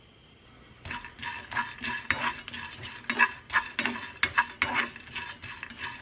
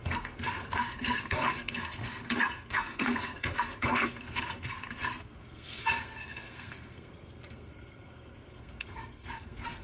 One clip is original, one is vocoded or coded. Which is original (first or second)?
first